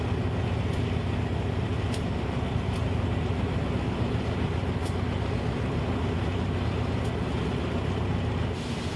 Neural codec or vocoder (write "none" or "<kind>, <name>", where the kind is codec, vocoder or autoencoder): none